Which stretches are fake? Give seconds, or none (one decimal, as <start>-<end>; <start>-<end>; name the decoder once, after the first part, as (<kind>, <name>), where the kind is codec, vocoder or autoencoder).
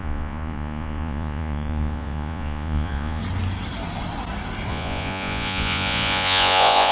0.0-3.2 (vocoder, Vocos); 4.7-6.9